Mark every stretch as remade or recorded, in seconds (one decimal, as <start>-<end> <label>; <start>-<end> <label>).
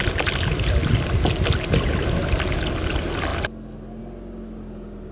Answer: 0.0-5.1 recorded